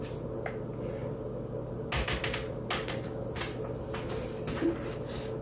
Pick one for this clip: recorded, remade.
recorded